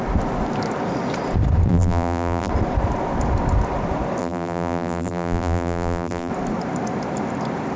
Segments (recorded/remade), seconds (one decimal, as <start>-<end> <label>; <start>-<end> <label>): 0.0-1.7 recorded; 1.7-2.5 remade; 2.5-4.2 recorded; 4.2-6.3 remade; 6.3-7.8 recorded